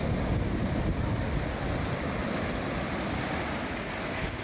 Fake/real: real